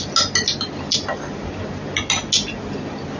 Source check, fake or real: real